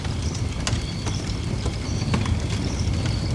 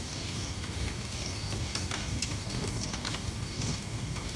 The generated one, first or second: second